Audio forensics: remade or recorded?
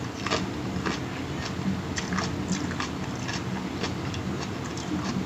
recorded